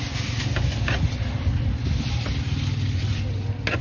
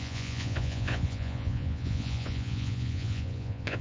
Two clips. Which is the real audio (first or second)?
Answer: first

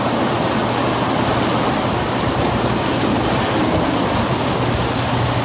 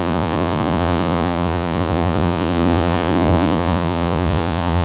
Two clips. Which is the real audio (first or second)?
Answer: first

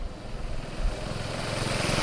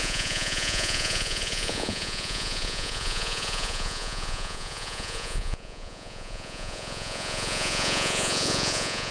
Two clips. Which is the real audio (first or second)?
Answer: first